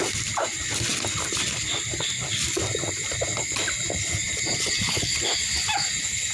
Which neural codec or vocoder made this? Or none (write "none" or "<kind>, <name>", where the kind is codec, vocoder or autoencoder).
none